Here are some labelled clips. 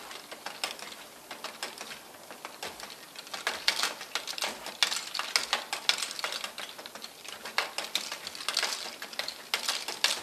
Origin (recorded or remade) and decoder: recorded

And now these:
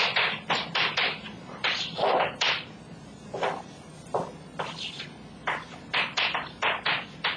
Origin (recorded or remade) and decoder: remade, vocoder, BigVGAN v2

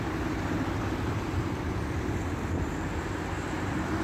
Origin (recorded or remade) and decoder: remade, vocoder, BigVGAN v2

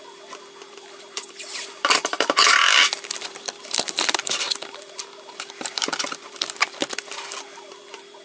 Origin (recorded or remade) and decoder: remade, vocoder, BigVGAN v2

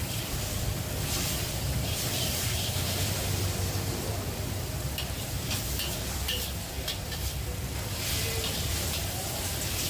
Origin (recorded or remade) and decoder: remade, vocoder, BigVGAN v2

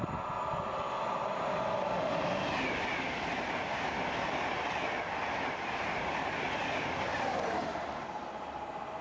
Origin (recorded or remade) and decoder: recorded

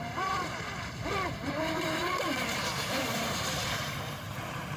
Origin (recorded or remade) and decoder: remade, vocoder, BigVGAN v2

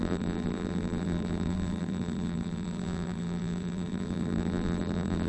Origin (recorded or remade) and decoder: remade, vocoder, BigVGAN v2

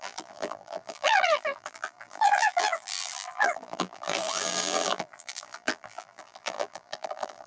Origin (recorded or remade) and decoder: remade, vocoder, BigVGAN v2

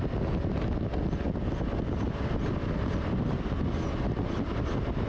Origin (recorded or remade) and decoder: recorded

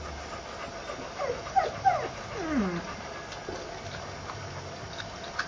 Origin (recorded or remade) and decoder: recorded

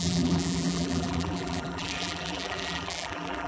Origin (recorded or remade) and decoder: remade, vocoder, BigVGAN v2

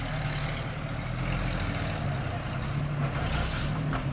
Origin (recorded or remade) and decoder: recorded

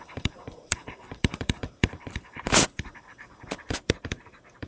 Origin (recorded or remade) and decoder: remade, vocoder, BigVGAN v2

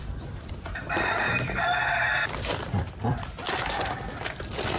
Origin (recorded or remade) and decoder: remade, vocoder, BigVGAN v2